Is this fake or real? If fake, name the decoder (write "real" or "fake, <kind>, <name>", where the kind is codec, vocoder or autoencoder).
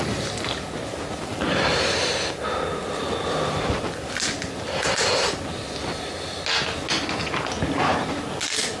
real